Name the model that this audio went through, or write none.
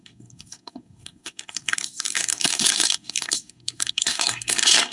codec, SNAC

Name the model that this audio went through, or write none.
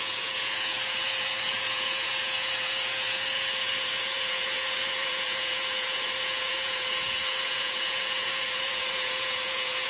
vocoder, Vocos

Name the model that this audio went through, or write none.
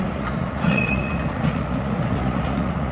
vocoder, Vocos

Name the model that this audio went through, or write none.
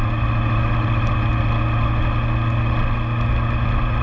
none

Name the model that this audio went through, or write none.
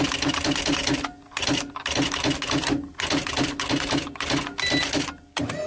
none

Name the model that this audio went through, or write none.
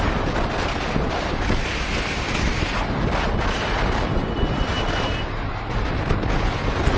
none